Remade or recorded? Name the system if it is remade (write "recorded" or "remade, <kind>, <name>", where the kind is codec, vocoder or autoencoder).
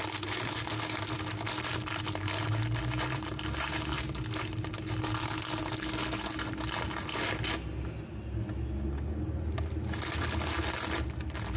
recorded